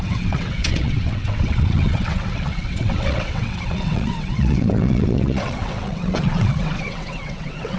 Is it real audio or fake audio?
fake